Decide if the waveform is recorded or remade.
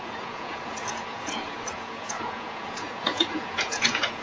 remade